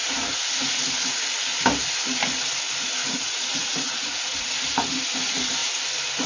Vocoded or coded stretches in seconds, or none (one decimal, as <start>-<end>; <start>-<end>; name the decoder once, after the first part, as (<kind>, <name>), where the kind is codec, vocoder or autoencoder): 0.0-0.8 (vocoder, Vocos); 3.0-4.5

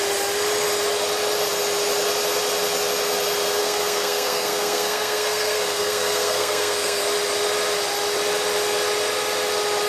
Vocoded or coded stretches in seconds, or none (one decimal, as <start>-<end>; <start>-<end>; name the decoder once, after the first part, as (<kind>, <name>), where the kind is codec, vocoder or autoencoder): 3.6-7.0 (codec, SNAC)

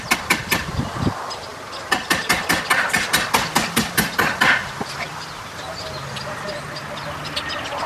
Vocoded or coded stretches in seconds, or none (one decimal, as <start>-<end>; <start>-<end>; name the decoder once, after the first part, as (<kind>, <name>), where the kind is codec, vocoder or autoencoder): none

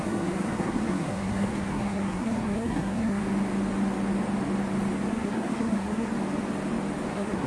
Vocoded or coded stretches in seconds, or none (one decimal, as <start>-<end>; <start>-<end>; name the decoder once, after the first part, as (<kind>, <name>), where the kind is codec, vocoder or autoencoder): 0.0-3.2 (codec, SNAC); 5.1-6.1; 7.1-7.5

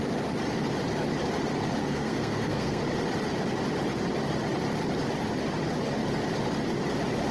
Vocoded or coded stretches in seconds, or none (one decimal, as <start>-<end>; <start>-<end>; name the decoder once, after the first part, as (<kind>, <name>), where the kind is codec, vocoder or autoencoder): 1.8-2.8 (codec, SNAC)